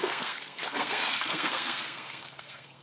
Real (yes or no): no